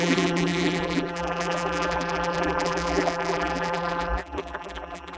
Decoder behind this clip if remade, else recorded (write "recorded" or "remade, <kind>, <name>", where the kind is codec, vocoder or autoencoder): remade, vocoder, BigVGAN v2